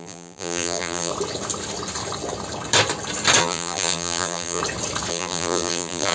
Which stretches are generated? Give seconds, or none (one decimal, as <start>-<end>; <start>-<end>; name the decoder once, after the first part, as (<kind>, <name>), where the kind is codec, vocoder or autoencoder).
0.0-1.1 (vocoder, BigVGAN v2); 3.4-4.6; 5.1-6.1

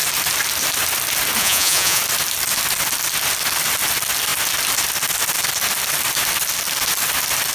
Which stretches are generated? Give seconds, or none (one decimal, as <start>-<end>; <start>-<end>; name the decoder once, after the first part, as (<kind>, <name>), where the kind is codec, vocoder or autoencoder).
1.4-2.0 (vocoder, Vocos)

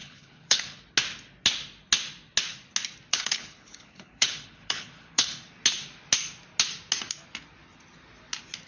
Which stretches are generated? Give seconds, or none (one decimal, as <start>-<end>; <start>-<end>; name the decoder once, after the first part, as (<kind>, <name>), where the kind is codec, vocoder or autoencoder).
0.0-0.8 (codec, HILCodec); 3.1-5.5

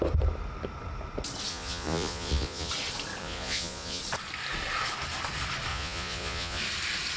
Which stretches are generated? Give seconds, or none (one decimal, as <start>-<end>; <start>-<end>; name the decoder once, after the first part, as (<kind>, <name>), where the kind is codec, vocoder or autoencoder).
1.5-2.7 (vocoder, Vocos); 3.2-4.0; 5.7-6.6

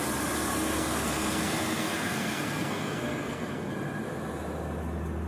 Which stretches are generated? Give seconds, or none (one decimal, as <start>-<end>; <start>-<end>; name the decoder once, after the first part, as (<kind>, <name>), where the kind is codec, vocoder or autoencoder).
0.5-3.7 (codec, SNAC)

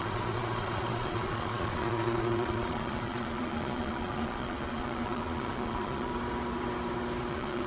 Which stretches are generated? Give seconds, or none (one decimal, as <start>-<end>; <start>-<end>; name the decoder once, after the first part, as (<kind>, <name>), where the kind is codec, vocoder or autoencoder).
0.0-6.1 (vocoder, Vocos); 7.3-7.7

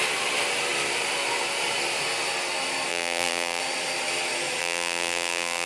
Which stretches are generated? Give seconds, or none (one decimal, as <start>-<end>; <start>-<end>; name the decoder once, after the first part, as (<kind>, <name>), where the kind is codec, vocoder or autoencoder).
2.9-3.6 (vocoder, BigVGAN v2); 4.6-5.7

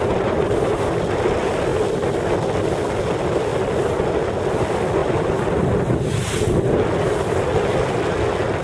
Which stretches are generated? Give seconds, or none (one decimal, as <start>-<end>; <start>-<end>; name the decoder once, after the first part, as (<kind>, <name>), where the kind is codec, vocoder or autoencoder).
none